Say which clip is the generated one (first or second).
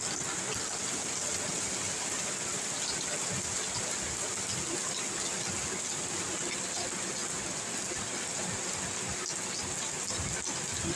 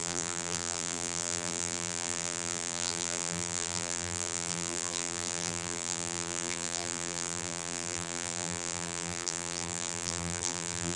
second